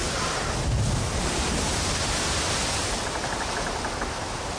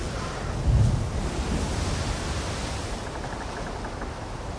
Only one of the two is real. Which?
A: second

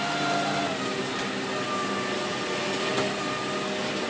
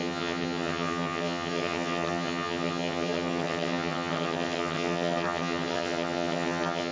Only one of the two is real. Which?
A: first